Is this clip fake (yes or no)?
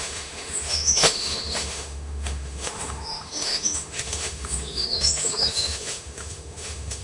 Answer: yes